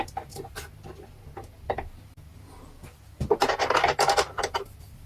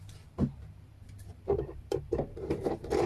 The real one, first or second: first